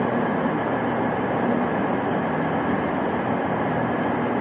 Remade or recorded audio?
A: recorded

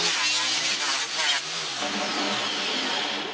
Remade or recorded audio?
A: recorded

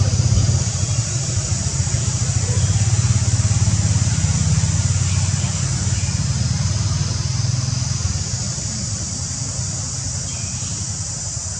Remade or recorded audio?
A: recorded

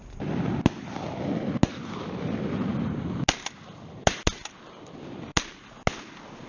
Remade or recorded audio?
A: recorded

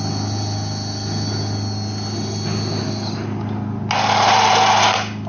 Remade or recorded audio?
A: recorded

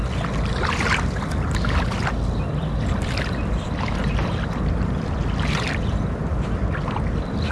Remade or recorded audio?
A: recorded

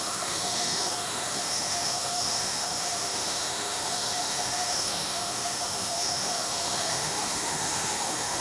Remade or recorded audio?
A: remade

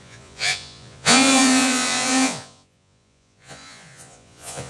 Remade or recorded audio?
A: remade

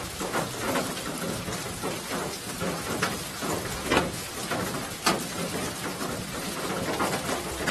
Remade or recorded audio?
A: recorded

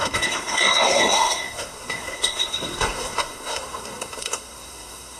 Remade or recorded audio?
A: remade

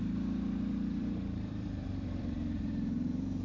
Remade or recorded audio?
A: remade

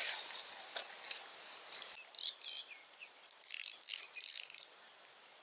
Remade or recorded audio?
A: remade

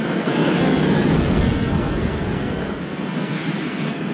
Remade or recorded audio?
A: remade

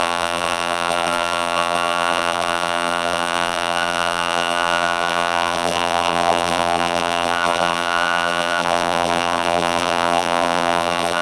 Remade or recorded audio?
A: remade